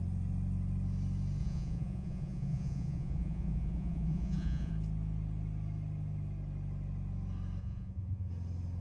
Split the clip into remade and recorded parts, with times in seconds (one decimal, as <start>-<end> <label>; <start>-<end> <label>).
0.0-1.4 recorded; 1.4-4.7 remade; 4.7-7.6 recorded; 7.6-8.3 remade; 8.3-8.8 recorded